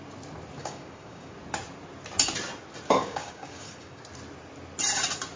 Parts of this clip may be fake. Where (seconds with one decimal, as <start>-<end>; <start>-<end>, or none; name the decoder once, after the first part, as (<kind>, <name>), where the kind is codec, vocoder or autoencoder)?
0.6-1.3 (codec, DAC); 3.0-4.0